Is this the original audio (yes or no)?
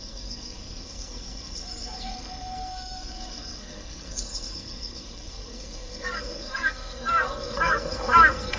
no